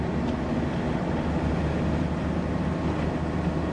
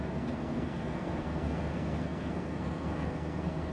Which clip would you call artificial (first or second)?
second